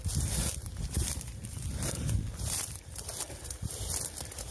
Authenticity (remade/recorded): remade